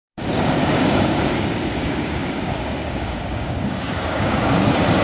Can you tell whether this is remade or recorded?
remade